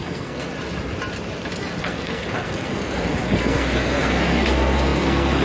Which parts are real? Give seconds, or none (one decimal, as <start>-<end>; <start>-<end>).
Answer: 0.5-1.8